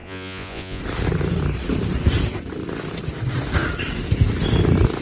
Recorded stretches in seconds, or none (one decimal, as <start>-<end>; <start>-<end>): 0.8-5.0